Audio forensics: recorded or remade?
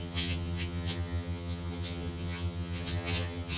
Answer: remade